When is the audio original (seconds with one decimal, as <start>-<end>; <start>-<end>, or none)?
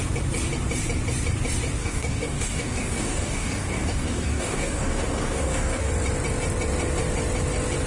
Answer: 0.0-1.8; 5.9-7.9